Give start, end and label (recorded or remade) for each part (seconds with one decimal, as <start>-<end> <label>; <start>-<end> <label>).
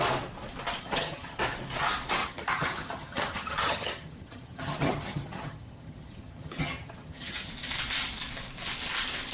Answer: 0.0-0.8 recorded; 0.8-1.4 remade; 1.4-2.2 recorded; 2.2-7.5 remade; 7.5-9.3 recorded